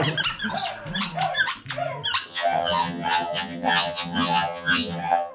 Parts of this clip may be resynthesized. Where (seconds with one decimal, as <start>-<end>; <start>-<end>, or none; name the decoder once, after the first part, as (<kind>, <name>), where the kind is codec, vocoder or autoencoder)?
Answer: 2.3-5.3 (vocoder, HiFi-GAN)